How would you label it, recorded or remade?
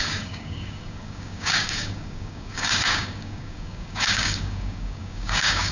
remade